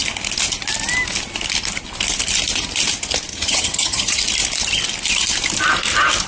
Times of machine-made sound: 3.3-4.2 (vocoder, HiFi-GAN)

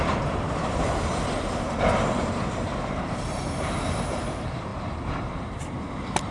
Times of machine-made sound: 0.0-6.3 (vocoder, BigVGAN v2)

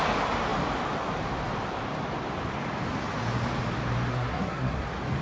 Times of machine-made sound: 4.1-4.8 (codec, SNAC)